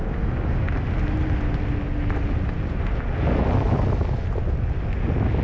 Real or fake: real